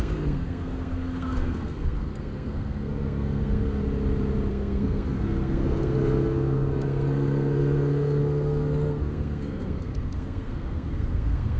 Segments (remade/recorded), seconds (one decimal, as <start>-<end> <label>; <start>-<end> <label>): 0.0-3.8 remade; 3.8-4.5 recorded; 4.5-11.6 remade